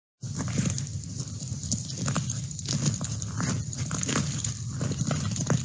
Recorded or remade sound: recorded